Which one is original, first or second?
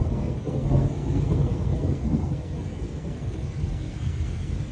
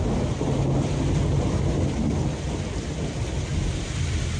second